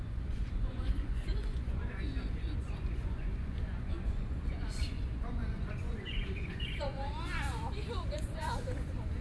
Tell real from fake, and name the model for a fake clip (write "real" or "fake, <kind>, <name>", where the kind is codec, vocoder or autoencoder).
fake, vocoder, Vocos